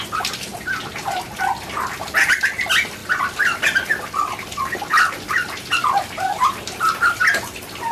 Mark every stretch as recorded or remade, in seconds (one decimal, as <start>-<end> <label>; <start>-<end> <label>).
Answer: 0.0-0.5 recorded; 0.5-1.4 remade; 1.4-3.0 recorded; 3.0-7.2 remade; 7.2-7.9 recorded